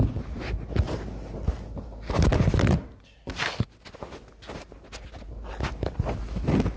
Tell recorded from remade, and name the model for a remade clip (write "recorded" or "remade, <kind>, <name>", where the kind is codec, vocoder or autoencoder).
recorded